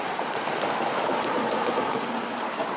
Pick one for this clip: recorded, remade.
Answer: recorded